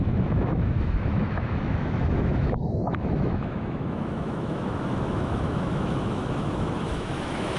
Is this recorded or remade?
remade